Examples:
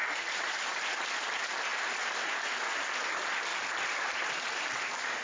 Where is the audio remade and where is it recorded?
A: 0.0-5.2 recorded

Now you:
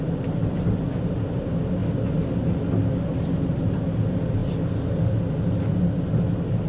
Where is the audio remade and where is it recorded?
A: 0.0-6.7 recorded